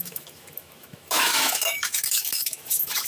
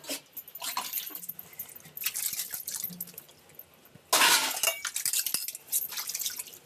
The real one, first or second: second